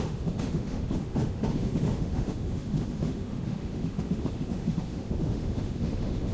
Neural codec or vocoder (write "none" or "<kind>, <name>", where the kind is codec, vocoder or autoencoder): autoencoder, DAC-VAE